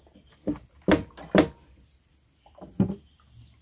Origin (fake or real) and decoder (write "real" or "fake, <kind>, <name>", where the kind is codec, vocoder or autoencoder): real